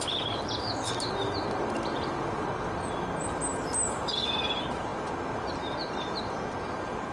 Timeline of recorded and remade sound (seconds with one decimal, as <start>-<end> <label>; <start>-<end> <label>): 0.0-7.1 recorded